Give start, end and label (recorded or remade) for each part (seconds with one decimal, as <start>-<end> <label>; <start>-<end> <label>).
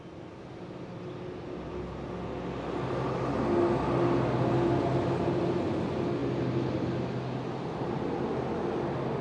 0.0-9.2 recorded